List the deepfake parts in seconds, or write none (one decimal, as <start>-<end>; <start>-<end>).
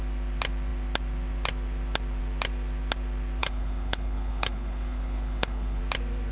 3.4-5.8